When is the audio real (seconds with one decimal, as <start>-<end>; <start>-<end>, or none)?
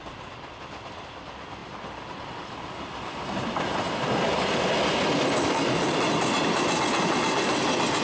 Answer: 0.0-8.0